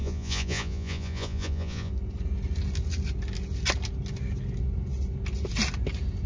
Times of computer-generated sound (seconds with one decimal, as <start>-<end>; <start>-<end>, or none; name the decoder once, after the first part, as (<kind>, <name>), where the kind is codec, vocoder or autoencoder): 0.0-1.9 (vocoder, Vocos)